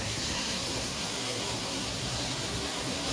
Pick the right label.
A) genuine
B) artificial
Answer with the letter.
B